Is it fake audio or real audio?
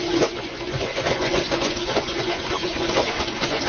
fake